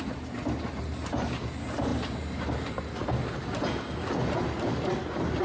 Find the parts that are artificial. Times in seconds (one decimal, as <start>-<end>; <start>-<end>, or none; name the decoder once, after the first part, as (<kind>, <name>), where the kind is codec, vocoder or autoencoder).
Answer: none